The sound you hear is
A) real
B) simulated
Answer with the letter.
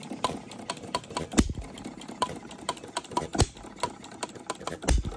A